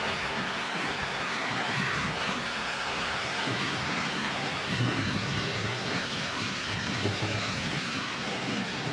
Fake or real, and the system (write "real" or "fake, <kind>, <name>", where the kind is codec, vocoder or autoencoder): fake, codec, SNAC